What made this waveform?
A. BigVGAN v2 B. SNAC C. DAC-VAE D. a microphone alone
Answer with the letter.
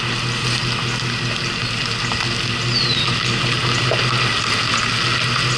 D